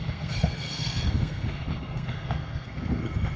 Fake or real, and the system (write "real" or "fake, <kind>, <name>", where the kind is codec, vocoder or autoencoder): fake, codec, SNAC